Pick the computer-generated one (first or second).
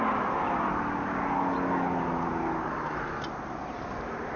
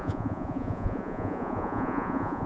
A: second